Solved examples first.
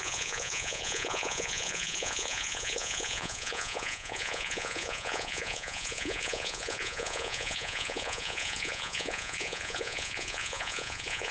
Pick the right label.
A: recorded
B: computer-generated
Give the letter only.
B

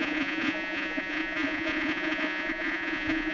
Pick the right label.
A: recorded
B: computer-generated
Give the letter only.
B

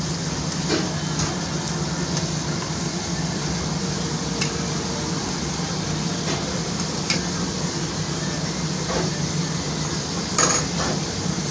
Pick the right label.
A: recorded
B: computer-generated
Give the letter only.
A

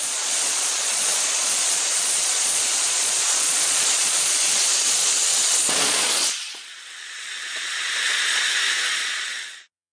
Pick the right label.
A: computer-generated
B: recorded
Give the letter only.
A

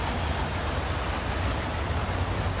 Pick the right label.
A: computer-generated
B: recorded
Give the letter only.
B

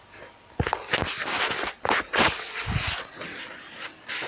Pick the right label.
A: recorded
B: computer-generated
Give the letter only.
A